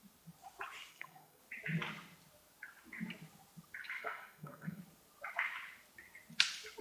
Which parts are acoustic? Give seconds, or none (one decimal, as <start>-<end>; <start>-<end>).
0.0-0.9; 1.4-4.0; 4.8-6.8